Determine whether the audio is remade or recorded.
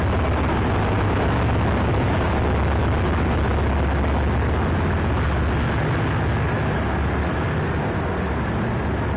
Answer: recorded